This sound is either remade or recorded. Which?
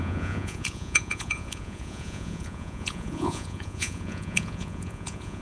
remade